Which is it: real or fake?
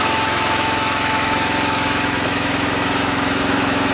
fake